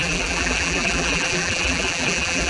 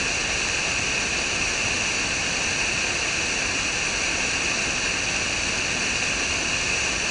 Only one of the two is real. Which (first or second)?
second